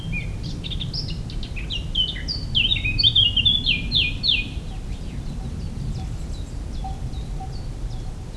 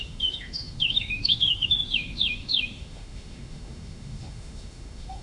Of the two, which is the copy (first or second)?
second